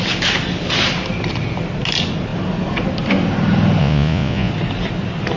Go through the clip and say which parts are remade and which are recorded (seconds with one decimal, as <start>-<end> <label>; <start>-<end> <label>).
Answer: 0.0-3.8 recorded; 3.8-4.5 remade; 4.5-5.4 recorded